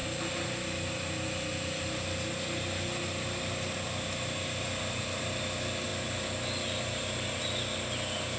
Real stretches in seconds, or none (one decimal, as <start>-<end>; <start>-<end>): 0.0-8.4